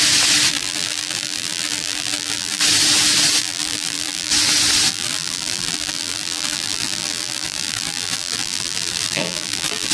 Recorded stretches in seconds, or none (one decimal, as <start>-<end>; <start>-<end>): 0.0-0.5; 2.6-3.4; 4.3-4.9